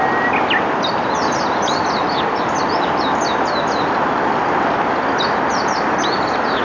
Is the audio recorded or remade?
recorded